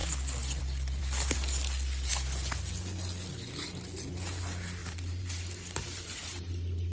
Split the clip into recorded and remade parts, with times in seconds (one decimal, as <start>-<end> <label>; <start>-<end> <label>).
0.0-4.8 recorded; 4.8-6.5 remade; 6.5-6.9 recorded